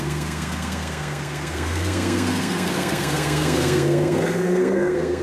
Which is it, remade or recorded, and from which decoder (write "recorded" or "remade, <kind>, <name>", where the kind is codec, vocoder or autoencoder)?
remade, codec, SNAC